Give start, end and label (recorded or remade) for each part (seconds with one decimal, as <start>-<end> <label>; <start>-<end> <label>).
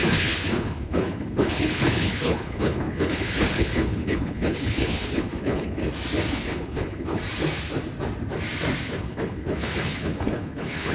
0.0-5.8 remade; 5.8-6.3 recorded; 6.3-7.2 remade; 7.2-8.9 recorded; 8.9-10.9 remade